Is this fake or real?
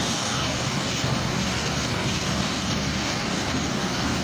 fake